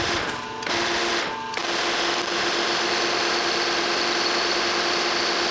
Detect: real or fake real